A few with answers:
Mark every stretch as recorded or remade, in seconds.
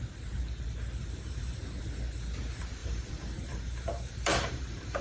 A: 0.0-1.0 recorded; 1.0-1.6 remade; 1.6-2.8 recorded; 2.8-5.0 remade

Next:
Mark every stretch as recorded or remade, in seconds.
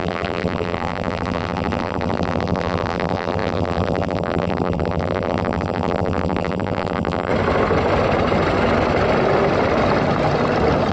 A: 0.0-7.3 remade; 7.3-10.9 recorded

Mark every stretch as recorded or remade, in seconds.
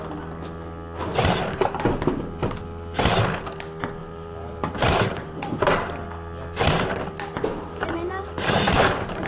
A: 0.0-4.0 recorded; 4.0-6.0 remade; 6.0-7.5 recorded; 7.5-9.3 remade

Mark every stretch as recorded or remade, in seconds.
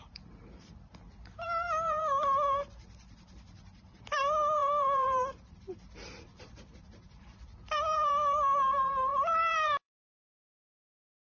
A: 0.0-11.2 remade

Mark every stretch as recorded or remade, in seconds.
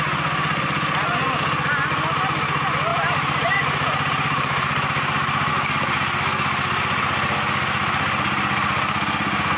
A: 0.0-2.9 recorded; 2.9-5.5 remade; 5.5-9.6 recorded